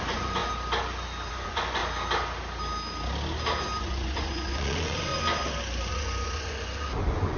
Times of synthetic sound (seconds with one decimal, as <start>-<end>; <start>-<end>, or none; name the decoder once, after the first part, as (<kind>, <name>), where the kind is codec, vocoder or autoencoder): 0.0-0.4 (vocoder, Vocos); 1.3-1.8; 3.8-5.1; 5.9-7.4